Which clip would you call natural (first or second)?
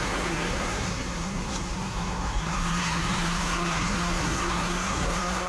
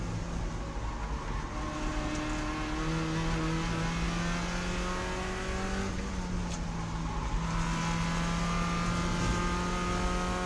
second